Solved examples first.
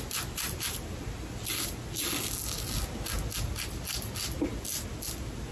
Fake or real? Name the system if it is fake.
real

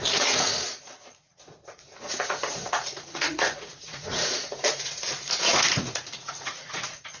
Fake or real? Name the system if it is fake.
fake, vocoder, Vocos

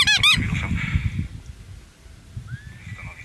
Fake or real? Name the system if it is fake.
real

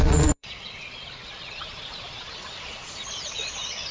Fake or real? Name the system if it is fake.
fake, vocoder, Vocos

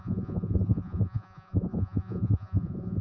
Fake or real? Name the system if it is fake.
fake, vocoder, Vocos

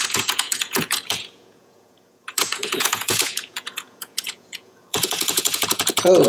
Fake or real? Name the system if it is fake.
fake, vocoder, Vocos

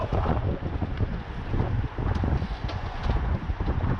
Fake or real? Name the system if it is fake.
fake, vocoder, Vocos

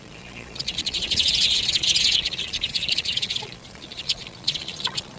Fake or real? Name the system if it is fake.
fake, vocoder, Vocos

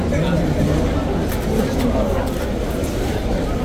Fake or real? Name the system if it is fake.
real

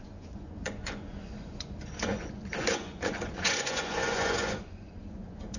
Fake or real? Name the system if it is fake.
fake, vocoder, Vocos